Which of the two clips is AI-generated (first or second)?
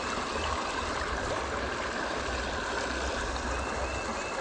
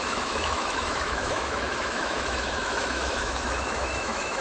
second